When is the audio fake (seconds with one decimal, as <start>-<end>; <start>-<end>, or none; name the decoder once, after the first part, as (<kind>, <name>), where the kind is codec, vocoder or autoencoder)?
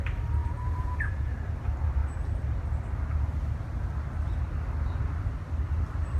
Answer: 0.4-1.3 (vocoder, Vocos)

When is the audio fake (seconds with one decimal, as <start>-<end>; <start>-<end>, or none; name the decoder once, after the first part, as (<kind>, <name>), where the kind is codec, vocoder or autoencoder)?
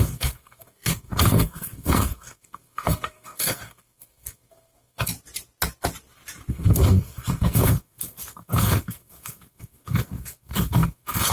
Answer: 0.0-5.1 (codec, SNAC); 6.5-11.3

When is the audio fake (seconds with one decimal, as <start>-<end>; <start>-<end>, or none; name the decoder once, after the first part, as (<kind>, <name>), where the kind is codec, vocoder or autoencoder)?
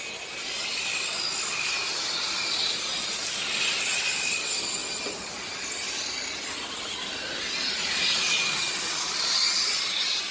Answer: none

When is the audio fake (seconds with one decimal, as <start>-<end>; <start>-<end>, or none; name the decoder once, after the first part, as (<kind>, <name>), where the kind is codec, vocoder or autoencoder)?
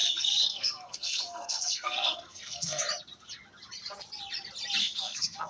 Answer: 0.0-2.8 (codec, SNAC); 4.8-5.5